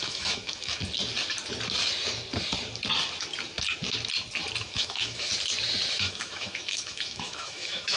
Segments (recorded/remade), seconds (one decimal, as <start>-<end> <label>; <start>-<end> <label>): 0.0-0.8 remade; 0.8-4.6 recorded; 4.6-5.3 remade; 5.3-5.9 recorded; 5.9-8.0 remade